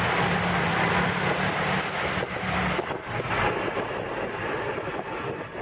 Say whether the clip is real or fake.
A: real